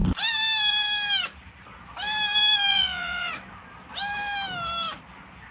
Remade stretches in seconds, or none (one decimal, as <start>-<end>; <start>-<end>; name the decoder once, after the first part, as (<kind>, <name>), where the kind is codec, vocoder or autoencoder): 2.7-3.3 (vocoder, Vocos)